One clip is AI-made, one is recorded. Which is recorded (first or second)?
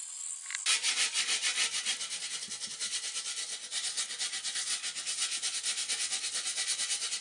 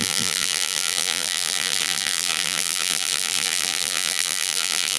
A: first